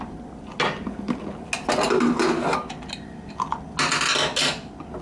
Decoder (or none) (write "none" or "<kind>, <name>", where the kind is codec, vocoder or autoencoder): none